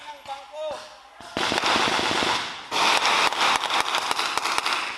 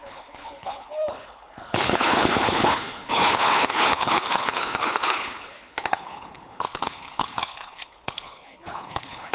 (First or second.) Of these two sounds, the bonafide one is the first